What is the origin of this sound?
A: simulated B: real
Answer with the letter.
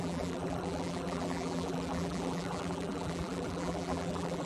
A